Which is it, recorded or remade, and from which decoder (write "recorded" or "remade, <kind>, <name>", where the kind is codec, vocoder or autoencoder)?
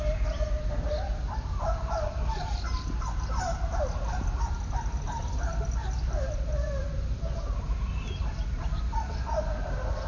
recorded